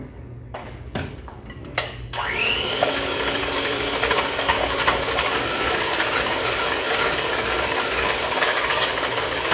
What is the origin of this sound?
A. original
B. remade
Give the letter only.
B